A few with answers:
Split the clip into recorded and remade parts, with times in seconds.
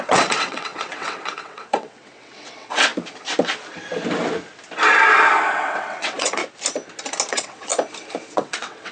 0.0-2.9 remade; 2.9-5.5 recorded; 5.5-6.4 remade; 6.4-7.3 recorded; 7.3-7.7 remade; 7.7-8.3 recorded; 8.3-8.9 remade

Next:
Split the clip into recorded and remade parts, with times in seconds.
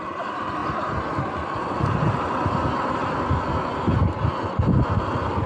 0.0-5.5 recorded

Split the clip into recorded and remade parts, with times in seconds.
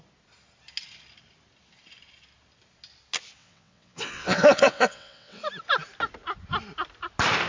0.0-3.4 recorded; 3.4-5.4 remade; 5.4-7.5 recorded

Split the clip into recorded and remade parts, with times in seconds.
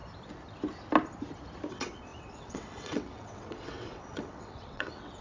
0.0-1.7 recorded; 1.7-5.2 remade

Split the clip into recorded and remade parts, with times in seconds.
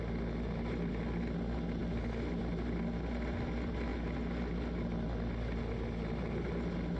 0.0-7.0 recorded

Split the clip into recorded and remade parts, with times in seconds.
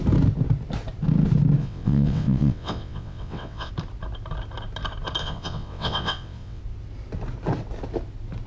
0.0-1.6 recorded; 1.6-3.7 remade; 3.7-5.2 recorded; 5.2-6.6 remade; 6.6-8.5 recorded